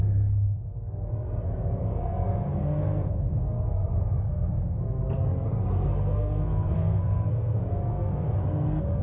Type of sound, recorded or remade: remade